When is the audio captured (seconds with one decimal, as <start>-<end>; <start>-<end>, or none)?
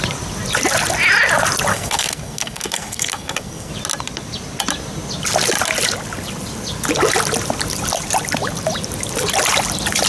0.0-1.7; 3.7-10.1